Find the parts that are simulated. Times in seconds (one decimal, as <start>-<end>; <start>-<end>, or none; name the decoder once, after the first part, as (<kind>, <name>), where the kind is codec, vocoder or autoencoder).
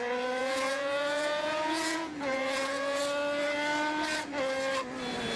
0.4-3.0 (vocoder, Vocos)